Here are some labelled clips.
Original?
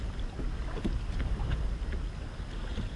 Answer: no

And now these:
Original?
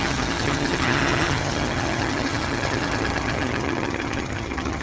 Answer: no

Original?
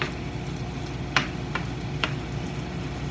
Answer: yes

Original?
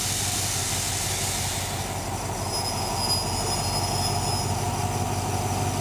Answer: yes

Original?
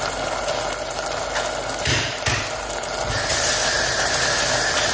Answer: yes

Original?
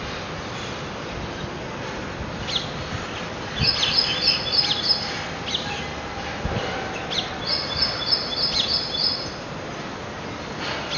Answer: yes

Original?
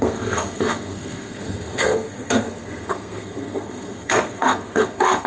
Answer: no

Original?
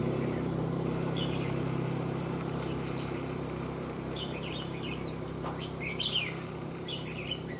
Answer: no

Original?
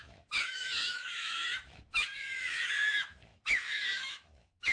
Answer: no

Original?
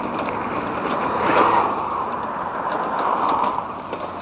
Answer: yes